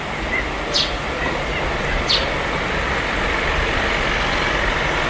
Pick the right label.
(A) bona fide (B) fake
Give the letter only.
A